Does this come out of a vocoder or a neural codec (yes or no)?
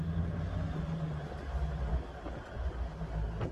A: no